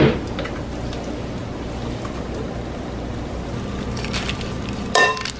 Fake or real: real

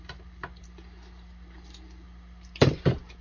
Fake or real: real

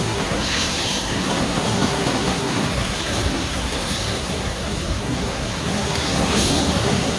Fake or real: fake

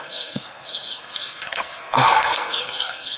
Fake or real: fake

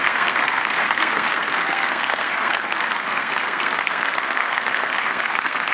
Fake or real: fake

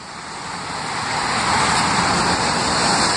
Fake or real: real